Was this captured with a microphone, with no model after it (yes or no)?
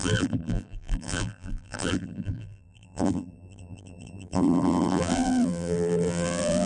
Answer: no